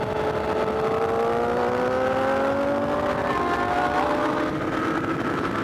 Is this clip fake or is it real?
real